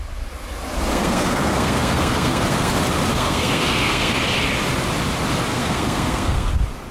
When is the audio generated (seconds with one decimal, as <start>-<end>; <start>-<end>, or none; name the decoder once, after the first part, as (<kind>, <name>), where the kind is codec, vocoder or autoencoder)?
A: 0.9-2.7 (codec, SNAC); 3.1-4.1; 5.5-6.5